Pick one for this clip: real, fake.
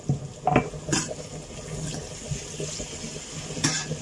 real